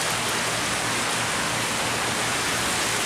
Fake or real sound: real